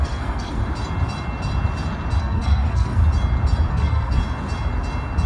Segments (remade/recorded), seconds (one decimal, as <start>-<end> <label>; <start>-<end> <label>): 0.0-0.6 remade; 0.6-2.2 recorded; 2.2-3.0 remade; 3.0-3.7 recorded; 3.7-4.2 remade; 4.2-5.3 recorded